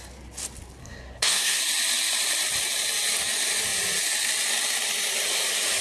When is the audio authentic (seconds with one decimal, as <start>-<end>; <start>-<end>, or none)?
0.0-0.8; 1.6-5.8